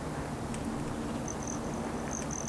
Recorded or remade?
recorded